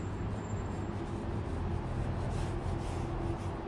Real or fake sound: real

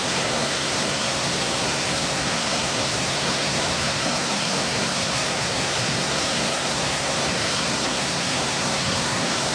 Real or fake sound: fake